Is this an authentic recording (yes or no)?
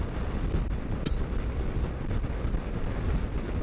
yes